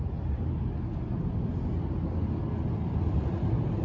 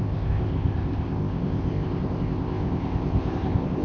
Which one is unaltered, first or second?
first